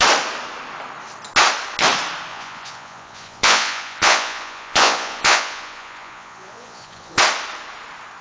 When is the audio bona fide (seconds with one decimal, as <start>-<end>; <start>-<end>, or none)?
0.0-2.3; 7.2-8.2